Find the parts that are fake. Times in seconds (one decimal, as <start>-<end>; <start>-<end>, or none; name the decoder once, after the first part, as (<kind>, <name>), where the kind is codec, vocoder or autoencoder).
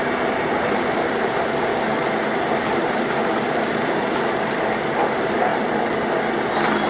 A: 0.0-1.7 (vocoder, BigVGAN v2); 2.6-5.5